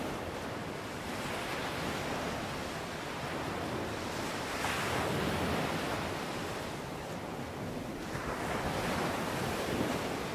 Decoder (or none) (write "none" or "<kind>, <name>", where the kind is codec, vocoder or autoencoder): none